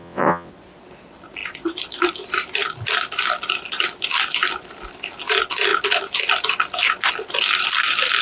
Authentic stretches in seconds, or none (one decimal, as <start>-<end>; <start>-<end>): 0.5-8.2